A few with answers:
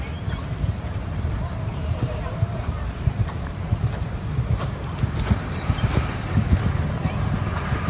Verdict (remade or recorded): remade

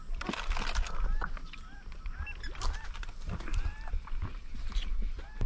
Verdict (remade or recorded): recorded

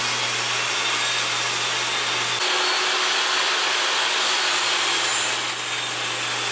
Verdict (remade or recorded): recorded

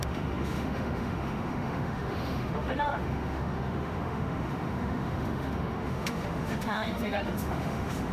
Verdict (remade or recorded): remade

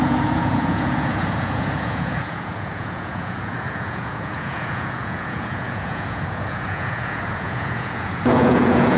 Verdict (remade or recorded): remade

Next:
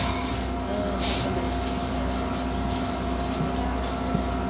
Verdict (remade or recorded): recorded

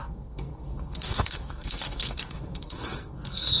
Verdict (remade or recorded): remade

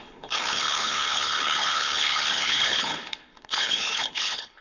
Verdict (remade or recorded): remade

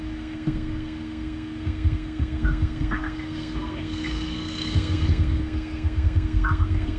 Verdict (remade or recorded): remade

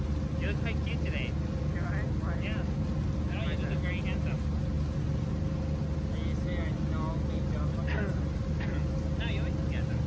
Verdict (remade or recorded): recorded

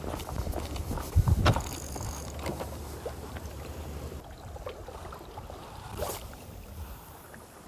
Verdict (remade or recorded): recorded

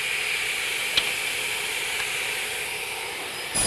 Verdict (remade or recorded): recorded